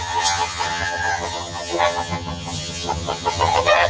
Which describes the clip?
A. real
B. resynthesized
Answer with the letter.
B